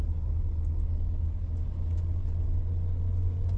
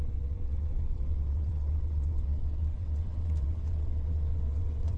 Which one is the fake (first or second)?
second